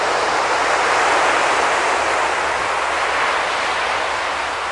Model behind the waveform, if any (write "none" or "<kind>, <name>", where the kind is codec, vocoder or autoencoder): none